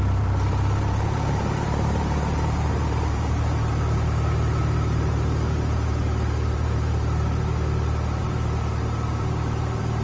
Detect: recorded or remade remade